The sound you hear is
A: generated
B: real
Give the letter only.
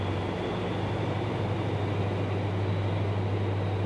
B